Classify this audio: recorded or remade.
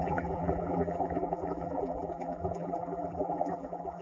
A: remade